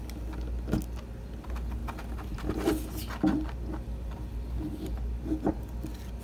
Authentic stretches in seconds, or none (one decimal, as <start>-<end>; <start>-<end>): 0.0-6.2